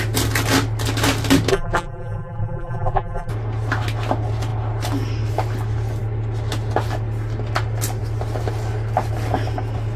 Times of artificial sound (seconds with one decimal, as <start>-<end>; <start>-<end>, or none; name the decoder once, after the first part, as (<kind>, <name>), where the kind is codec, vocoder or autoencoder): 1.5-3.3 (vocoder, BigVGAN v2)